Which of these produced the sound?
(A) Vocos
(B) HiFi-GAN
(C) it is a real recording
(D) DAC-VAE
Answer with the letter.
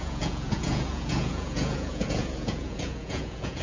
A